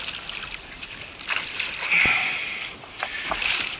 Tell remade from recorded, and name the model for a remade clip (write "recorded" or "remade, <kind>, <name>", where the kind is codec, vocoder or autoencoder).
recorded